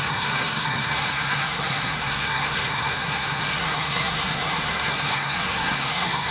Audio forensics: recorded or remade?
remade